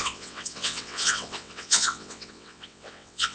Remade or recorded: remade